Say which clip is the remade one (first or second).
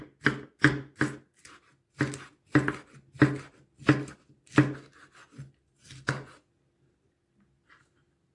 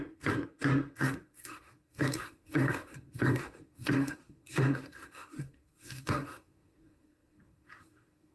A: second